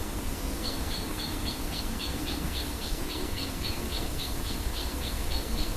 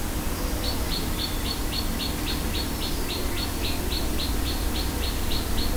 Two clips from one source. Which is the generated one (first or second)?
first